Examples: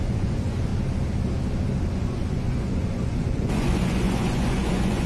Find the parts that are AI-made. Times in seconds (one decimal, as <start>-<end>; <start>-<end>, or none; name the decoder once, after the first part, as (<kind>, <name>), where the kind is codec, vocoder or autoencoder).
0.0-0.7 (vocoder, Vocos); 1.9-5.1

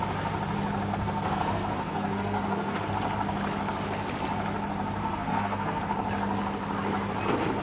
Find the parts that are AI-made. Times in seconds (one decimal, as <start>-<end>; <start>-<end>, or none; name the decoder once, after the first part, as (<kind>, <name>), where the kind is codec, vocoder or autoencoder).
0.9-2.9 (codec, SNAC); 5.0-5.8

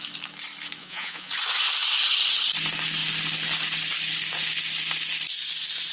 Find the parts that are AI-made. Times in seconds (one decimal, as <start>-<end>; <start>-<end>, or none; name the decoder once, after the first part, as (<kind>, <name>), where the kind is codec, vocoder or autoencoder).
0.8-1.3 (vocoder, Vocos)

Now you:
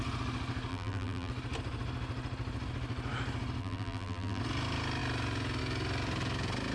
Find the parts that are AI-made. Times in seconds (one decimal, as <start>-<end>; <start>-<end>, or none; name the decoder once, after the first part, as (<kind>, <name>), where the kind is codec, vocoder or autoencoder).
0.7-1.3 (vocoder, BigVGAN v2); 3.6-4.4